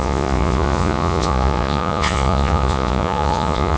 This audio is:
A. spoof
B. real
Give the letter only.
A